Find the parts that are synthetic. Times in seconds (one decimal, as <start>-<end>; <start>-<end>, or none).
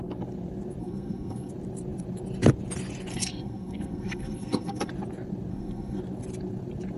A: 0.8-1.5; 3.1-4.9; 5.5-6.0